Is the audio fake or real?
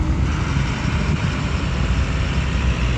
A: real